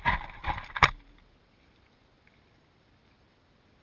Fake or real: real